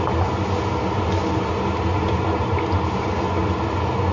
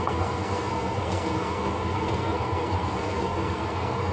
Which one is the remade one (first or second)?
second